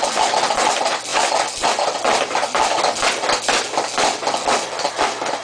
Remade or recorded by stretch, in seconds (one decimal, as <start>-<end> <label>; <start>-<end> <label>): 0.0-5.4 recorded